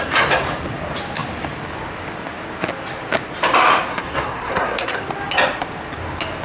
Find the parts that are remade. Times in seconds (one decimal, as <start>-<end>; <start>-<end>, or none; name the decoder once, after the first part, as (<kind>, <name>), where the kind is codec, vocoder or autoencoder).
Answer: 3.9-5.0 (codec, SNAC)